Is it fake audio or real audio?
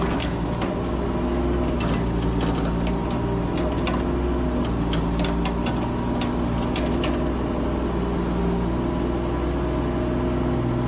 real